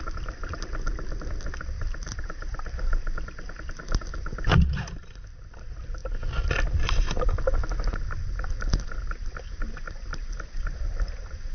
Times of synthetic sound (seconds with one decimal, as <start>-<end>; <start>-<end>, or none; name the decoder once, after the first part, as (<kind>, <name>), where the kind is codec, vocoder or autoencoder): none